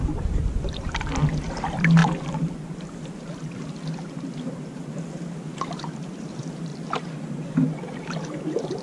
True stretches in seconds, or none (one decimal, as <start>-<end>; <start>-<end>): 6.7-7.5